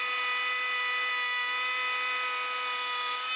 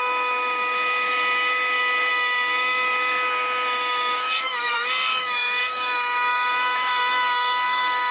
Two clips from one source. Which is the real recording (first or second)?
first